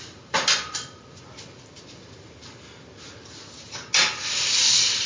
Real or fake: real